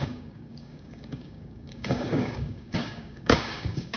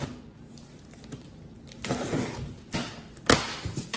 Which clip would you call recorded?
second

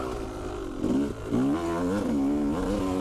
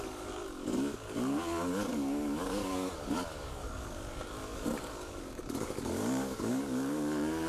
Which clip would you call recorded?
first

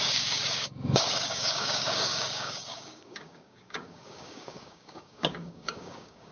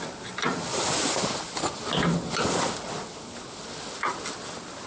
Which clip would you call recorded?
second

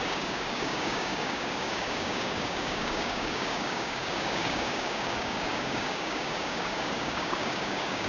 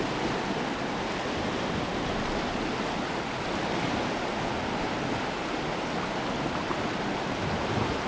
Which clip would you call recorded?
second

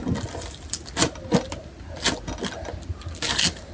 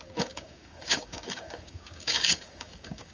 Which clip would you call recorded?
first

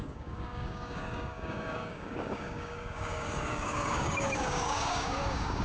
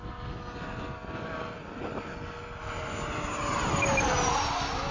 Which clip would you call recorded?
second